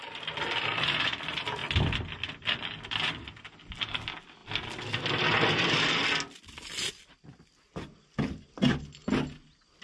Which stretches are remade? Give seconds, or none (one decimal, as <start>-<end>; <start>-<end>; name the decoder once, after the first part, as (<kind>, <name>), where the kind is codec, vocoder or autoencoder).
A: none